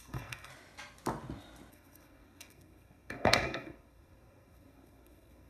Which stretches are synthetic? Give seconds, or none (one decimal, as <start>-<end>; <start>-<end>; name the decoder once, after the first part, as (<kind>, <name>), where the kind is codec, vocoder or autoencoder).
0.0-0.5 (codec, SNAC); 1.7-5.5